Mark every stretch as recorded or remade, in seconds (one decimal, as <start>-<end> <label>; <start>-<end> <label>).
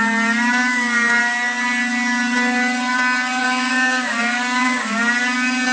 0.0-0.6 recorded; 0.6-1.2 remade; 1.2-3.4 recorded; 3.4-5.0 remade; 5.0-5.7 recorded